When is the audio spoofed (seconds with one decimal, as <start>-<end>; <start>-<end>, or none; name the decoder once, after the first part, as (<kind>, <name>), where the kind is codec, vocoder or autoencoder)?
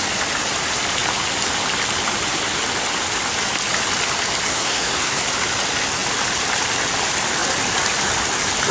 4.5-5.2 (codec, SNAC)